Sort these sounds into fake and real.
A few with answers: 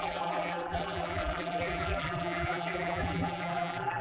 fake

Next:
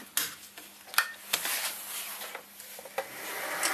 real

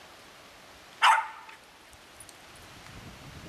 real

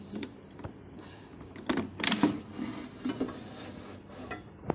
real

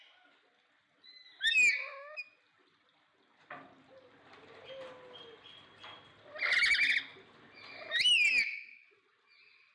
real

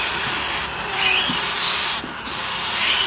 fake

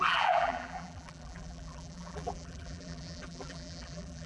fake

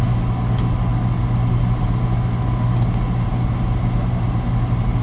real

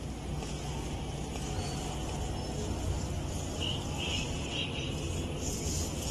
real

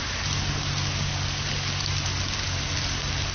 real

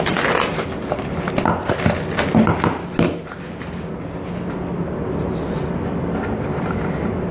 real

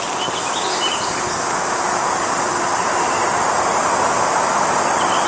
real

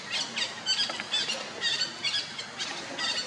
real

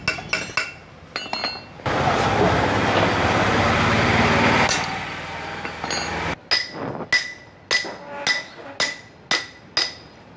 real